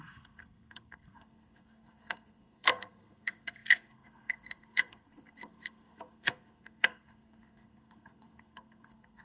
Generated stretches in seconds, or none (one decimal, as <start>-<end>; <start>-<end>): 0.0-9.2